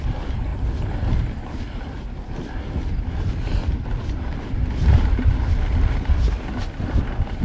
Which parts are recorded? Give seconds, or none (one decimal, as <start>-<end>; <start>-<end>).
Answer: 0.0-7.4